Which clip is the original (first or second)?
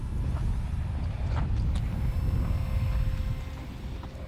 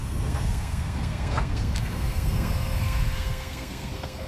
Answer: first